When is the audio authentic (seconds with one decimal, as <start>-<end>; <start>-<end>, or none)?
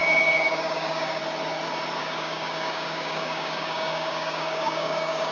1.2-2.0